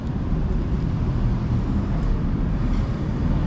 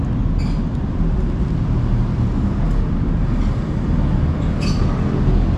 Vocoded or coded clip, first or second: first